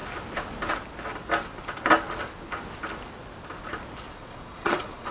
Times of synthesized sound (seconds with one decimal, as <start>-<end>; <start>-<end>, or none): 4.1-5.1